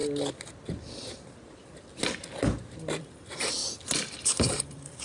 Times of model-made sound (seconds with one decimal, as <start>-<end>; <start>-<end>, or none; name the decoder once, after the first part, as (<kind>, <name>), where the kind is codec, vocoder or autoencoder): 3.0-3.6 (vocoder, BigVGAN v2); 4.2-5.0